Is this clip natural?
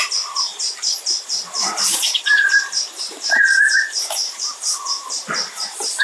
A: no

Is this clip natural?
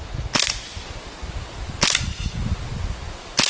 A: yes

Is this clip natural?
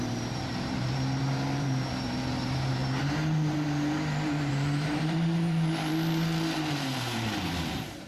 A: no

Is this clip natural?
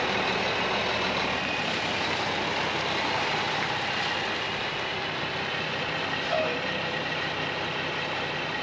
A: yes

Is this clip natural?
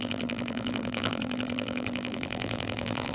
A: no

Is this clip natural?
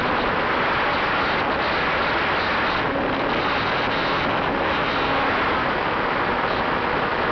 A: yes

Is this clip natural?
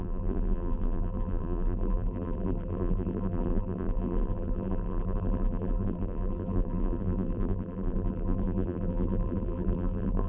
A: no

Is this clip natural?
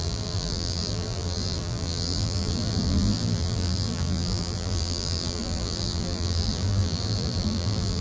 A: no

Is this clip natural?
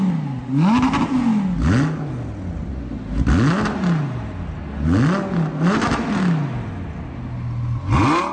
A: yes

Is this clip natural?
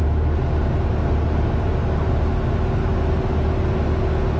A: yes